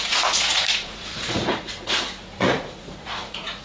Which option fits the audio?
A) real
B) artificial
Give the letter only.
B